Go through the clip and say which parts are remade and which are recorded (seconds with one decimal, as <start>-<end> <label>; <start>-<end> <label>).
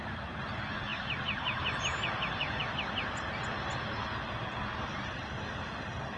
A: 0.0-6.2 recorded